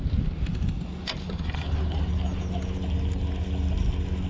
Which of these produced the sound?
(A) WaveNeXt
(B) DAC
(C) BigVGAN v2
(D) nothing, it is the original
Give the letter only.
D